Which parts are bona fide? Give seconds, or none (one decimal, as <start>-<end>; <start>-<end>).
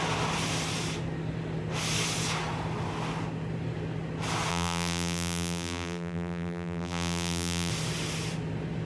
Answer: 0.0-4.5; 7.7-8.9